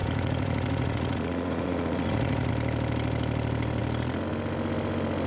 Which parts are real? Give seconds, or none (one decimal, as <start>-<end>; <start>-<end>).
2.5-5.3

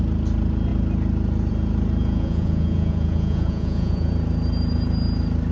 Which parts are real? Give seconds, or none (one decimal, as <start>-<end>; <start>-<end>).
0.0-2.0; 4.1-5.5

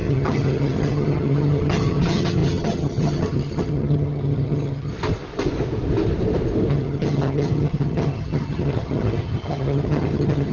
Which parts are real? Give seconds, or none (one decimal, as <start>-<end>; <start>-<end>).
4.9-6.7

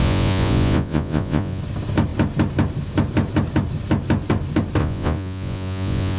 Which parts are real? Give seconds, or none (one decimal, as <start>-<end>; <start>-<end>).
1.6-4.8

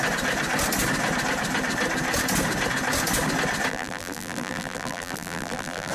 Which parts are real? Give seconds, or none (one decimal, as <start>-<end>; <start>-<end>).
0.0-3.7

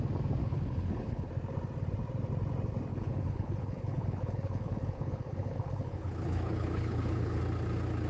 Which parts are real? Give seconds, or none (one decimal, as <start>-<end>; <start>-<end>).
0.0-0.4; 1.3-2.9; 7.4-8.1

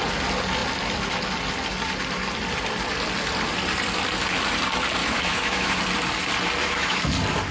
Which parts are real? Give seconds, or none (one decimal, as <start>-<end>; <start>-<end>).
0.0-5.0; 5.8-6.6; 7.1-7.5